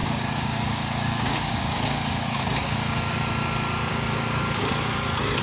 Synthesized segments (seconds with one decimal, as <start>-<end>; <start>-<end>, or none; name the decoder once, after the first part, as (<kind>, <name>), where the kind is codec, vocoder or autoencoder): 0.0-3.2 (codec, DAC); 3.9-4.7